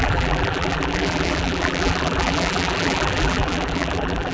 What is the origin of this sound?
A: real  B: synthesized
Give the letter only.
B